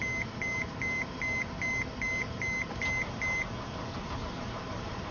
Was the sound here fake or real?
real